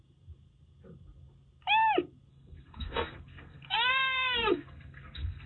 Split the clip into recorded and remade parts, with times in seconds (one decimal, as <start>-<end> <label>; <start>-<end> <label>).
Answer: 0.0-2.3 recorded; 2.3-5.5 remade

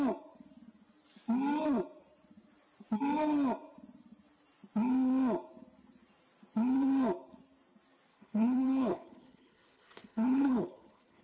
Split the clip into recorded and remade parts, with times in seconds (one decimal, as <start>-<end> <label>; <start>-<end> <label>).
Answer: 0.0-8.1 recorded; 8.1-11.2 remade

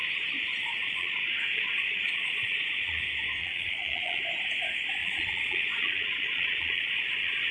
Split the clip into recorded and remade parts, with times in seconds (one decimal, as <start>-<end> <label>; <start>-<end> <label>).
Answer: 0.0-0.7 recorded; 0.7-3.0 remade; 3.0-3.4 recorded; 3.4-4.2 remade; 4.2-5.0 recorded; 5.0-7.5 remade

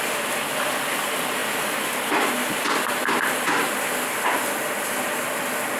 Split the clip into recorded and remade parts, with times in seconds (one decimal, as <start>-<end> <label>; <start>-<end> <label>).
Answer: 0.0-5.8 recorded